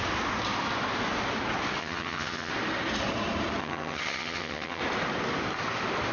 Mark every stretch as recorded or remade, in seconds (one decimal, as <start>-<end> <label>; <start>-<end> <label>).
0.0-1.8 recorded; 1.8-2.5 remade; 2.5-3.6 recorded; 3.6-4.8 remade; 4.8-6.1 recorded